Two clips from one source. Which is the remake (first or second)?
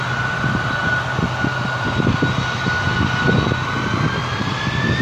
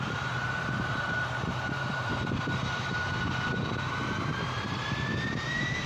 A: second